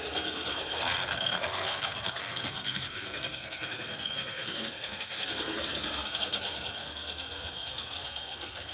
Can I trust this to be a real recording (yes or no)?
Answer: no